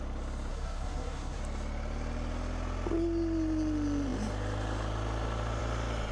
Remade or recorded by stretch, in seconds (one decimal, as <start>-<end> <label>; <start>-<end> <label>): 0.0-0.5 recorded; 0.5-1.4 remade; 1.4-6.1 recorded